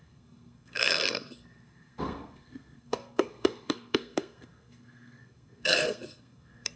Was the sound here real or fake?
fake